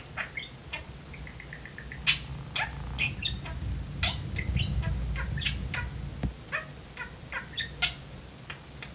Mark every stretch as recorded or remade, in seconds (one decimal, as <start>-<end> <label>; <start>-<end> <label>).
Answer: 0.0-8.9 recorded